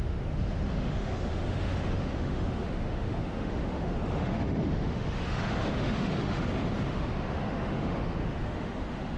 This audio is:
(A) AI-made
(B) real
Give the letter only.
A